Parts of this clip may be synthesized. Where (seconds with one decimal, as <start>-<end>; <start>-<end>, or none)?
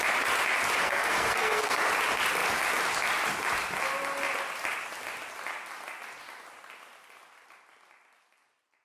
0.8-1.8